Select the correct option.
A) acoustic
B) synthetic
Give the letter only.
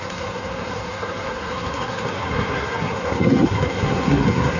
B